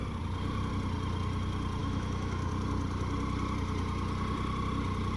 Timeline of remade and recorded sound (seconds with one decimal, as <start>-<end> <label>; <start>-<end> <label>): 0.0-1.8 recorded; 1.8-2.5 remade; 2.5-5.2 recorded